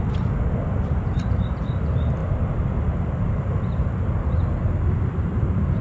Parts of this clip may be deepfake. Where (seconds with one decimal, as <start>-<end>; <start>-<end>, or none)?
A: none